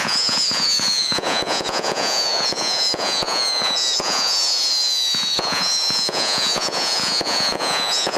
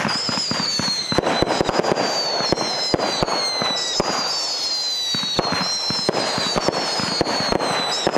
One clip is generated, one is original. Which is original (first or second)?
second